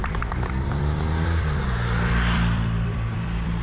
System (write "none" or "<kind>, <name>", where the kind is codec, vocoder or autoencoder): vocoder, BigVGAN v2